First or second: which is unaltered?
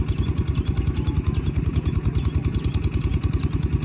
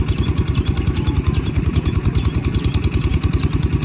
first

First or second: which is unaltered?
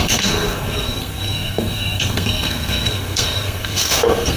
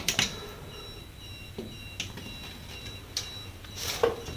second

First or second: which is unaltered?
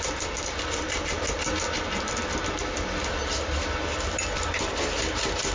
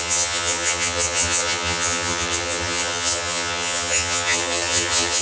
first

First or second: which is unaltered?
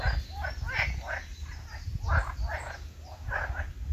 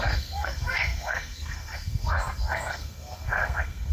first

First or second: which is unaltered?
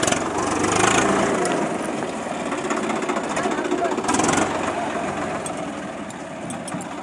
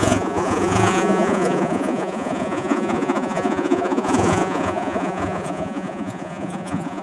first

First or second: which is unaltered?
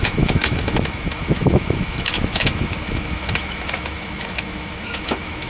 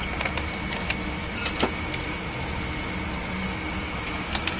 second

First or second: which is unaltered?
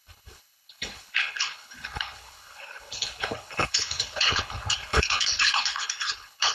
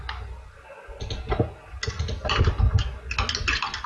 second